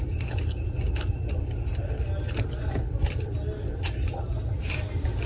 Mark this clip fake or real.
real